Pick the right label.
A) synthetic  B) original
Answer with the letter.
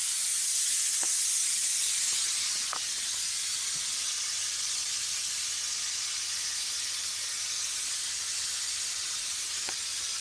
B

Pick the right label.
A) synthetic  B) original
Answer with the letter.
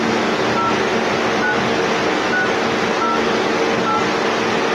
B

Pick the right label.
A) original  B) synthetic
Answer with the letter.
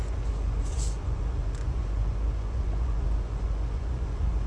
B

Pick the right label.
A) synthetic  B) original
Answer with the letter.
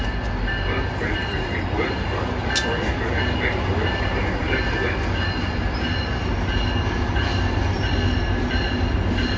B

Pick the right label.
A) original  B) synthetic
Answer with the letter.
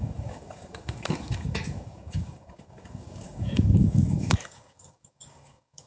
B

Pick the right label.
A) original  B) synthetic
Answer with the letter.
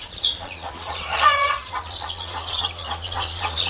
B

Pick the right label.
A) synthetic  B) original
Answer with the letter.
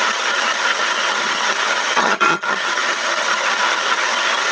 A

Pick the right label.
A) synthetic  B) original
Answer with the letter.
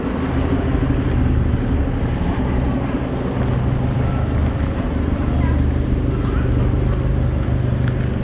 B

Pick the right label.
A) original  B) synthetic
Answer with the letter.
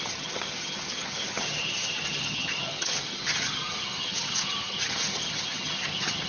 B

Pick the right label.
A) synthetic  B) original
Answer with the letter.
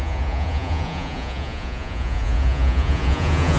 A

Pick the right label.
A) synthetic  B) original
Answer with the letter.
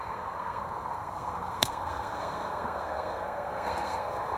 A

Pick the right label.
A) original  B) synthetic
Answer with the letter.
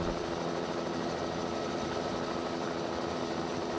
A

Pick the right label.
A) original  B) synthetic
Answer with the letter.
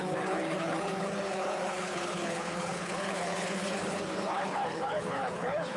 B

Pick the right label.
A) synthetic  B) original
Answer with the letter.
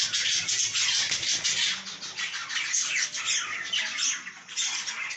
B